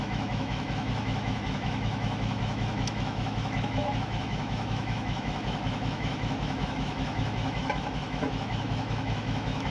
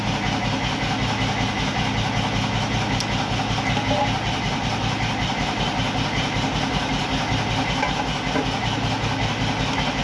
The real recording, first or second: second